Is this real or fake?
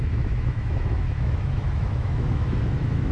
fake